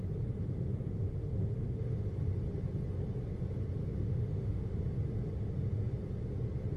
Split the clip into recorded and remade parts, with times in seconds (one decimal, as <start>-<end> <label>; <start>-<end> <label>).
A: 0.0-0.9 recorded; 0.9-2.0 remade; 2.0-3.8 recorded; 3.8-4.8 remade; 4.8-6.8 recorded